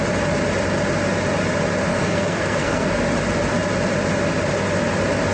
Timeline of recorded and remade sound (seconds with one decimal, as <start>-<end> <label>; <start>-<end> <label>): 0.0-1.9 recorded; 1.9-3.0 remade; 3.0-5.3 recorded